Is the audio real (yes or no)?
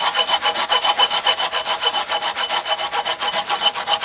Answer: yes